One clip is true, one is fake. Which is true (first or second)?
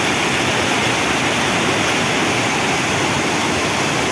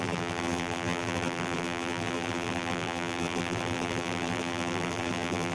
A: first